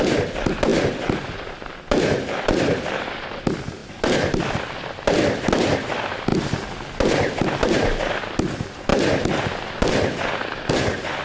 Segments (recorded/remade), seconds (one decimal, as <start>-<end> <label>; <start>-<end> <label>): 0.0-3.8 recorded; 3.8-4.6 remade; 4.6-11.2 recorded